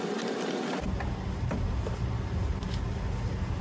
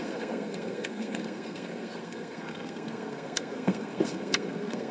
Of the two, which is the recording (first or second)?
first